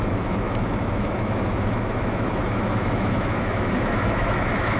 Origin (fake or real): fake